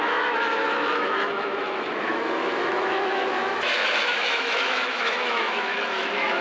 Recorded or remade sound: remade